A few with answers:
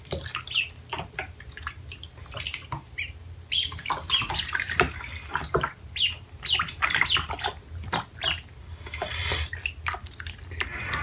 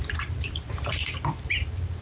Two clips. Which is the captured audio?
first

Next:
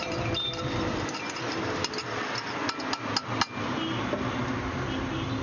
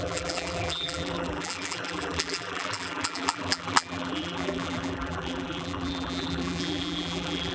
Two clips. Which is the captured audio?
first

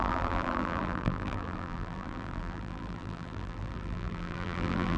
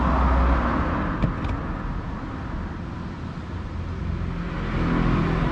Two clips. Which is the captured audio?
second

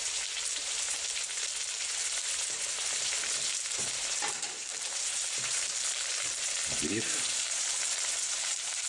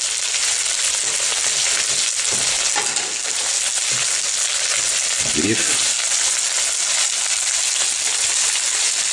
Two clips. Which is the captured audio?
second